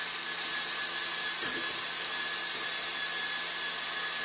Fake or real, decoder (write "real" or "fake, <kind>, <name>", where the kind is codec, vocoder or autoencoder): real